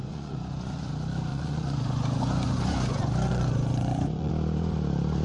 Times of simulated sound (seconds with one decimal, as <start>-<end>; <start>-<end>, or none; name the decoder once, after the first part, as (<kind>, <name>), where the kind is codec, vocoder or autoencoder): 0.0-0.9 (vocoder, Vocos); 1.3-4.3